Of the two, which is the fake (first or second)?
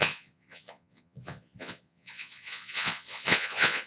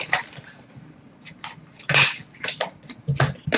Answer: first